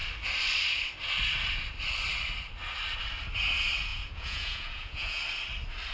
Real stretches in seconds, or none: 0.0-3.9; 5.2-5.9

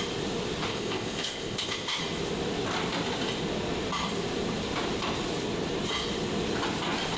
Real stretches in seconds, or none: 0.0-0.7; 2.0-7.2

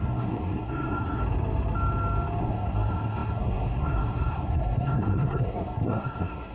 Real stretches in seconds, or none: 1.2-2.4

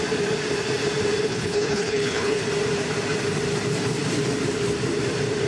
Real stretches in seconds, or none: 0.0-1.3; 2.4-5.5

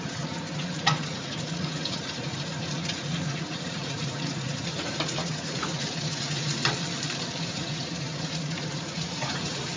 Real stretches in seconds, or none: 6.6-7.4

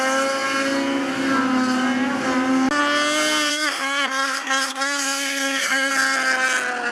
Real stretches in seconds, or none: 0.0-3.5; 5.9-6.9

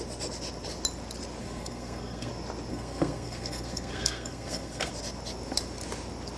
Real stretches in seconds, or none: 0.0-1.4; 2.3-2.7; 4.9-6.4